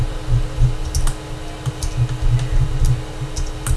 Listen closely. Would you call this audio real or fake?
real